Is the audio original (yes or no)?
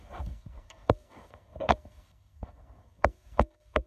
no